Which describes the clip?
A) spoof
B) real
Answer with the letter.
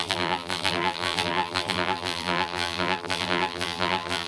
A